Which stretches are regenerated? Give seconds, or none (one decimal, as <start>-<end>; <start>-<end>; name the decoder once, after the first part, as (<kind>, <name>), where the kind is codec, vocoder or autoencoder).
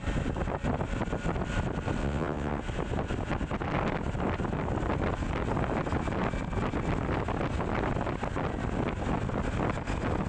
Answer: 2.0-2.6 (vocoder, WaveNeXt)